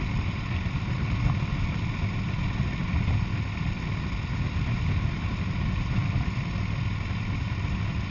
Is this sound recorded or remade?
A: recorded